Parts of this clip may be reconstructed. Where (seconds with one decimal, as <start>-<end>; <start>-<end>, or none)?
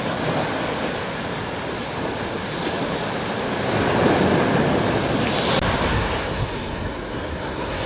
5.9-7.9